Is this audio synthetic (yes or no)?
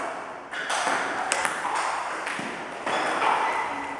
no